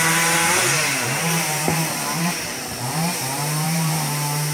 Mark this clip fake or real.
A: fake